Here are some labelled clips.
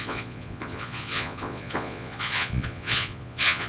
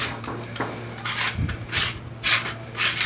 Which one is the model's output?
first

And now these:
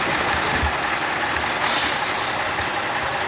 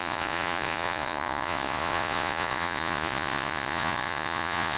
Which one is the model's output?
second